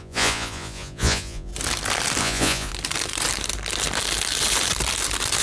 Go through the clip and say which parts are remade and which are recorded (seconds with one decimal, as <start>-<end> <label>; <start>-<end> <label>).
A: 0.0-1.5 remade; 1.5-2.2 recorded; 2.2-2.7 remade; 2.7-5.4 recorded